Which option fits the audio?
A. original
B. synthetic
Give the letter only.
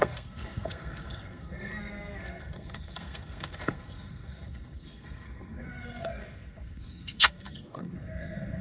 B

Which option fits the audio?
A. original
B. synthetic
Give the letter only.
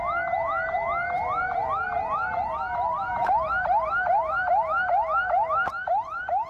A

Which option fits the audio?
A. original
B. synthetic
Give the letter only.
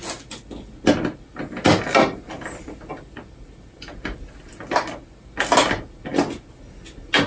A